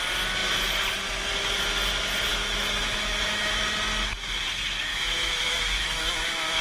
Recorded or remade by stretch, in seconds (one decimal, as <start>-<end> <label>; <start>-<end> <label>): 0.0-2.3 recorded; 2.3-3.6 remade; 3.6-4.9 recorded; 4.9-6.1 remade; 6.1-6.6 recorded